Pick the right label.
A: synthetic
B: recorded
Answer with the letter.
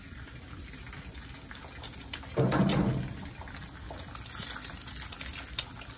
B